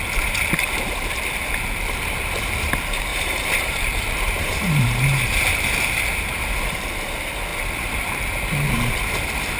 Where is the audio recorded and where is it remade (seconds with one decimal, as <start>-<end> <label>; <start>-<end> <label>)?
0.0-3.1 recorded; 3.1-5.7 remade; 5.7-9.6 recorded